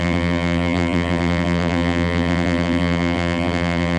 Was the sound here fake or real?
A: fake